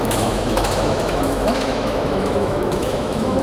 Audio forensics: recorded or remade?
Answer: remade